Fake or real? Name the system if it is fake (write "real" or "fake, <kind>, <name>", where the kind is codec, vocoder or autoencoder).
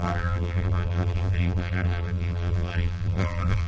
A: fake, vocoder, BigVGAN v2